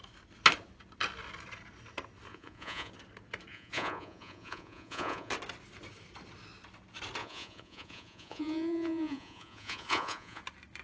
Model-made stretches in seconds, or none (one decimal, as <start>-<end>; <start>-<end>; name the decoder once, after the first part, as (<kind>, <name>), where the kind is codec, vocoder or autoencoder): 2.3-2.9 (vocoder, Vocos); 3.5-5.3; 7.2-10.4